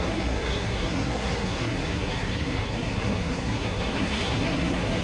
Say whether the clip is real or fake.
fake